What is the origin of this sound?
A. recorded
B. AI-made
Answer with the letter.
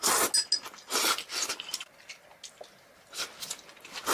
A